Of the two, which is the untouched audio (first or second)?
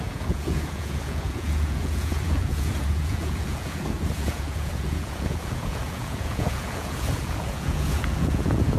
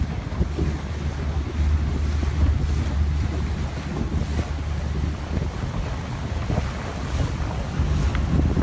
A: second